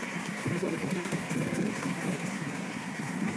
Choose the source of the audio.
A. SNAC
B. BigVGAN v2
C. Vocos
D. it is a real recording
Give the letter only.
A